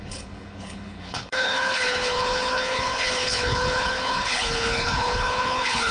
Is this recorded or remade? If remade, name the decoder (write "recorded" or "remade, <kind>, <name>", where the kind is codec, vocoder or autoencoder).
remade, codec, HILCodec